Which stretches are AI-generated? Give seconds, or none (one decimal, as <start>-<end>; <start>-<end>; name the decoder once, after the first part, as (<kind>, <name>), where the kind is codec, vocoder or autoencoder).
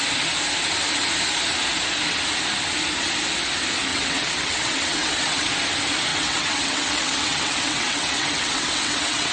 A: 3.9-5.5 (vocoder, WaveNeXt); 6.1-9.3